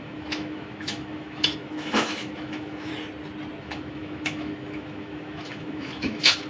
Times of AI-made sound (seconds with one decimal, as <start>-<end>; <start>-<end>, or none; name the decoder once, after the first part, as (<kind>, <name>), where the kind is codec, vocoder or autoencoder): 0.0-2.9 (autoencoder, DAC-VAE); 3.6-6.5